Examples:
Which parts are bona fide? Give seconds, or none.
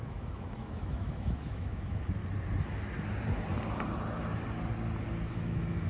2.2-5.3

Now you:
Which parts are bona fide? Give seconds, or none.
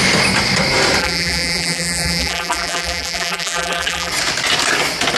0.0-1.0; 4.1-5.2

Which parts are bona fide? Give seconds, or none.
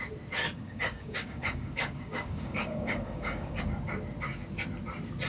0.0-0.4; 3.6-5.3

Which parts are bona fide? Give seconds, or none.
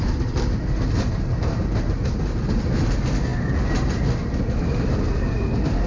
0.0-5.9